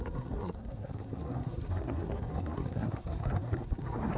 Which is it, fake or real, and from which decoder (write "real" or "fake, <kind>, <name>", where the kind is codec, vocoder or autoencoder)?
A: fake, codec, SNAC